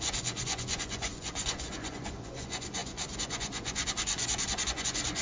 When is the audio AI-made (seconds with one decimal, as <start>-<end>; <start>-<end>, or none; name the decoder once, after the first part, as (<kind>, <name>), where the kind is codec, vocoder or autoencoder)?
0.0-5.2 (vocoder, Vocos)